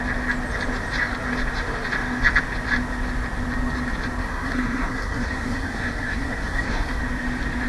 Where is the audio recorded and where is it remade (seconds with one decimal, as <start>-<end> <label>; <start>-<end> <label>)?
0.0-4.2 recorded; 4.2-7.0 remade; 7.0-7.7 recorded